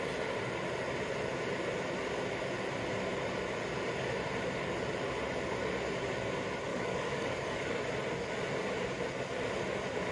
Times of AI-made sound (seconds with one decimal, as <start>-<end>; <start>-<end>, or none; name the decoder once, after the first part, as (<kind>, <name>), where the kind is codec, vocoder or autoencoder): 6.7-7.8 (codec, DAC)